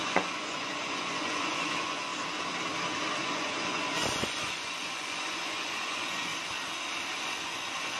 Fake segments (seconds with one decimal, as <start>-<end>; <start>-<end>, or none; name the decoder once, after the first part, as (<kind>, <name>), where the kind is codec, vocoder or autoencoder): 0.0-2.1 (vocoder, Vocos); 3.2-6.3; 7.2-8.0